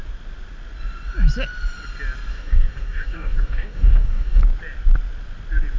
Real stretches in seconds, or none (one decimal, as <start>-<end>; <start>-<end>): 0.0-2.3; 4.4-5.8